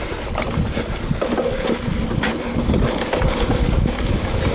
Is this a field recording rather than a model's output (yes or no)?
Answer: yes